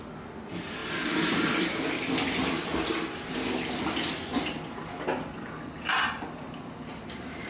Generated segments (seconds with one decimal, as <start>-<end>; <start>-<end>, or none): 0.8-1.7